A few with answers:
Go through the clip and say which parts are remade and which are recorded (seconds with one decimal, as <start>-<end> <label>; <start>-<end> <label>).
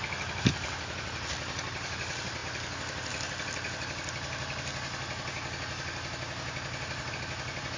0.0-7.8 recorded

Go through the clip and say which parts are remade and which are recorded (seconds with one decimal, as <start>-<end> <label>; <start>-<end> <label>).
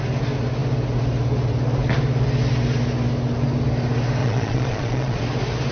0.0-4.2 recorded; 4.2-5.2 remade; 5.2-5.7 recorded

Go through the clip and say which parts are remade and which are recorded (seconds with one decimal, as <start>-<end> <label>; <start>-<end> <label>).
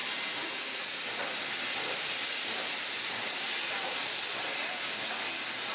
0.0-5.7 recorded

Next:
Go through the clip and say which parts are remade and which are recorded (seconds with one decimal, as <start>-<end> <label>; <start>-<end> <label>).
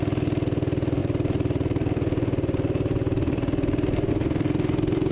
0.0-5.1 recorded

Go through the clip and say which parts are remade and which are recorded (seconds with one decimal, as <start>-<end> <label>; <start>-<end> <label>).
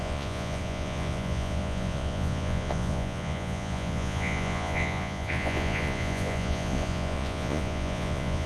0.0-8.5 remade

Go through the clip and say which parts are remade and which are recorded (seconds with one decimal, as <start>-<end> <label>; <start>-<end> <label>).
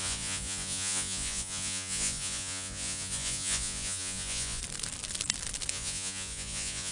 0.0-4.6 remade; 4.6-5.7 recorded; 5.7-6.9 remade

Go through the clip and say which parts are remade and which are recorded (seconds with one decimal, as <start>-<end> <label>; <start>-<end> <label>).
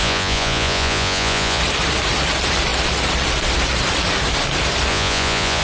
0.0-1.6 remade; 1.6-4.9 recorded; 4.9-5.6 remade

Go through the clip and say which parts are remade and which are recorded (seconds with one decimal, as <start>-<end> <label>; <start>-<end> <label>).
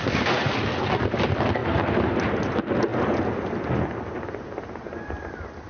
0.0-5.7 recorded